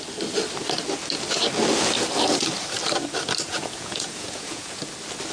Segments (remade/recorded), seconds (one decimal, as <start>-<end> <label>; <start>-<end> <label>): 0.0-3.5 recorded; 3.5-4.8 remade; 4.8-5.3 recorded